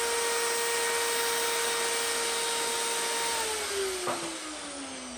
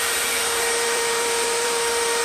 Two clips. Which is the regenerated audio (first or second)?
second